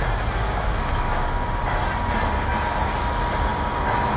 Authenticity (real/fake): real